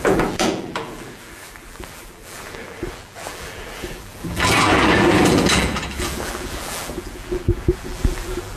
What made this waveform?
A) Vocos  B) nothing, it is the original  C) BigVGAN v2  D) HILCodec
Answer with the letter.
C